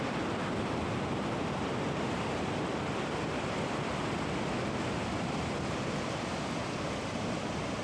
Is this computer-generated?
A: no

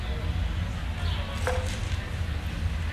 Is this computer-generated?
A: no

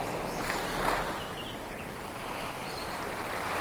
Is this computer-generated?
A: no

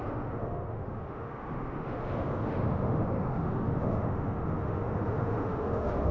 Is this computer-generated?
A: yes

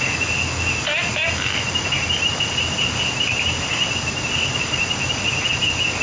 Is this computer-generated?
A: no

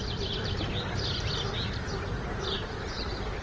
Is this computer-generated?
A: no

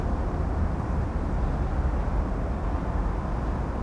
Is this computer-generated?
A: no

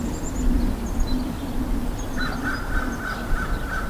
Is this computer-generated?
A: no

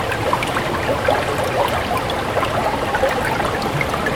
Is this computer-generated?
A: no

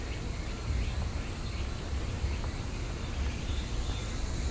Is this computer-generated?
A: no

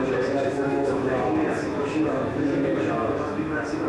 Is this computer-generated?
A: yes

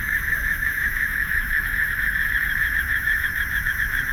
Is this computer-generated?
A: yes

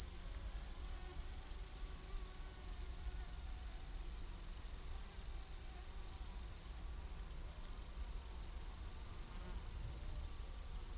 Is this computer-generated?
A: no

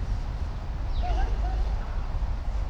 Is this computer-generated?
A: no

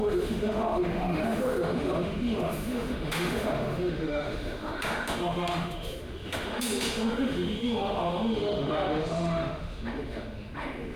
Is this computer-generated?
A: yes